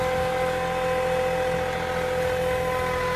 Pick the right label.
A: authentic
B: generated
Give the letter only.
A